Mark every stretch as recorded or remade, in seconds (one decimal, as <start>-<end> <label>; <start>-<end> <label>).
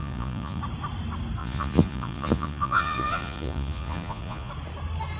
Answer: 0.0-0.6 remade; 0.6-1.4 recorded; 1.4-4.5 remade; 4.5-5.2 recorded